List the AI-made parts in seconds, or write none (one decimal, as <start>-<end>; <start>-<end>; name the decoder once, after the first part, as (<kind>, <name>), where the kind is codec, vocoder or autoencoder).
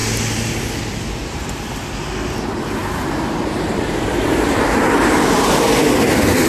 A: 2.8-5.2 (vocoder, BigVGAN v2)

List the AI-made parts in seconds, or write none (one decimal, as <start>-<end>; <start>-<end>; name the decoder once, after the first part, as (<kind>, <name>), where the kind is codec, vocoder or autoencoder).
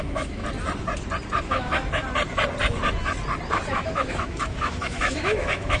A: 0.0-0.4 (autoencoder, DAC-VAE); 1.4-2.0; 3.7-5.8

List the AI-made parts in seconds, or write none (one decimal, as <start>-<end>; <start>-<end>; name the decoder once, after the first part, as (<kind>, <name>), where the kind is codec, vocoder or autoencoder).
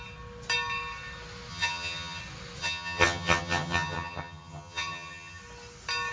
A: 1.5-2.2 (vocoder, HiFi-GAN); 2.6-5.4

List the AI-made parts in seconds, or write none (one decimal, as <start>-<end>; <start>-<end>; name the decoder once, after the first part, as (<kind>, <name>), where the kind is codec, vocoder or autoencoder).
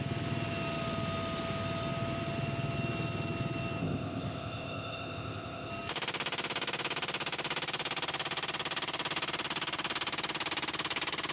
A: 3.8-5.7 (codec, ZipCodec)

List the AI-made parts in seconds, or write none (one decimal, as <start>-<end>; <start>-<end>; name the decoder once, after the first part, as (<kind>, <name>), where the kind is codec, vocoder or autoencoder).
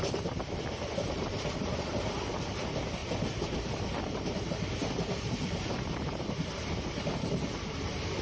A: 1.0-2.4 (vocoder, BigVGAN v2); 3.0-8.2